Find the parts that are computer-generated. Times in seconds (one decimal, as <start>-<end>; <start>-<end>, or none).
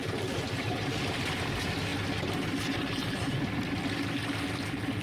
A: none